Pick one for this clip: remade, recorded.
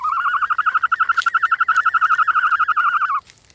recorded